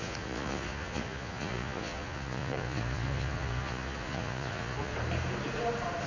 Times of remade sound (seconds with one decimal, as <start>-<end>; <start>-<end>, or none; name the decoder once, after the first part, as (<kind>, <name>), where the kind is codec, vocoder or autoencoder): 0.0-4.9 (vocoder, Vocos)